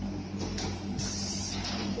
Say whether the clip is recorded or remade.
recorded